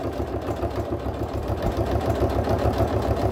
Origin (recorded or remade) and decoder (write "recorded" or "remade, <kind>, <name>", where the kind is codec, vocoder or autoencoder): recorded